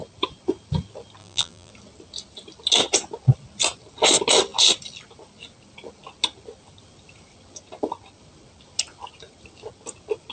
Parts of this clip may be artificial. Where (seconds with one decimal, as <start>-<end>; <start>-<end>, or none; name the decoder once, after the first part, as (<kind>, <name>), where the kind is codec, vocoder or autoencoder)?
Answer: 1.2-1.7 (vocoder, BigVGAN v2)